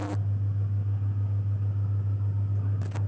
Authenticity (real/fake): real